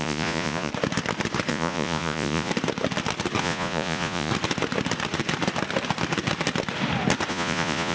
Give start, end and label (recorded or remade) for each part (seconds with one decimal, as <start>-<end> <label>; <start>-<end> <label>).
0.0-0.7 remade; 0.7-1.5 recorded; 1.5-2.5 remade; 2.5-3.4 recorded; 3.4-4.3 remade; 4.3-7.3 recorded; 7.3-7.9 remade